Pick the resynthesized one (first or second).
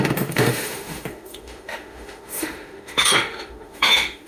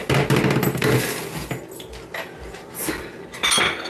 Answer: first